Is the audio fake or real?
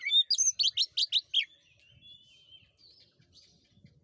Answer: real